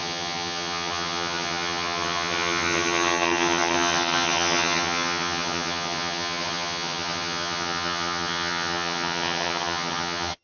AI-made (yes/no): yes